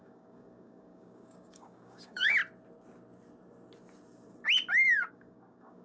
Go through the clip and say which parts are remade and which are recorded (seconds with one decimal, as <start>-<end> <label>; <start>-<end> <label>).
0.0-2.4 remade; 2.4-5.1 recorded; 5.1-5.8 remade